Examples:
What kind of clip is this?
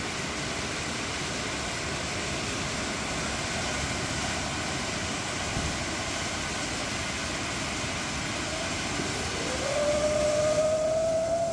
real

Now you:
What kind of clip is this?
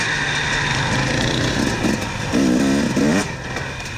real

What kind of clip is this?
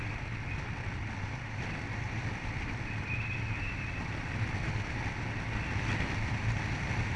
real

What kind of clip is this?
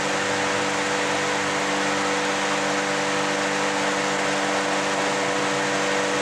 real